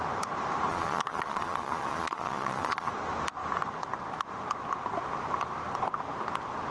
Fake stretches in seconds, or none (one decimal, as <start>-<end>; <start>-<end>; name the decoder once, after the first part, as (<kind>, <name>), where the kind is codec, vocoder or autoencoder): 0.7-2.9 (vocoder, Vocos)